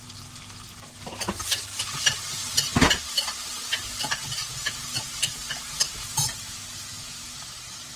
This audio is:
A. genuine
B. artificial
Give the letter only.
A